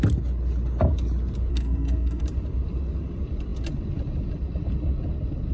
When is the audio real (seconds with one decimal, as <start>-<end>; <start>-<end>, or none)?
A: 0.0-1.5; 2.2-5.5